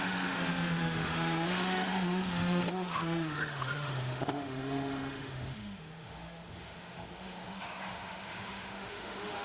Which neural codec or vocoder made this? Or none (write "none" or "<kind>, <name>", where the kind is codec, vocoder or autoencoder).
autoencoder, DAC-VAE